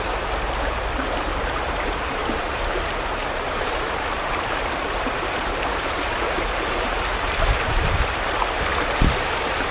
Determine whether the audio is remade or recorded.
remade